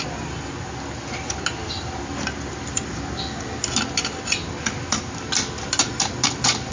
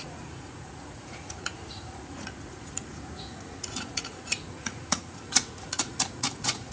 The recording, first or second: first